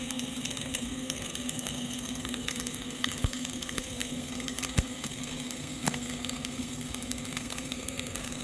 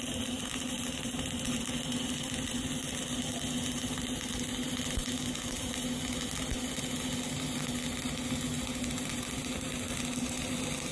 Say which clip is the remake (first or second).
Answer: first